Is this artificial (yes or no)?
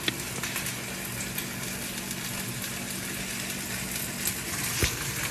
no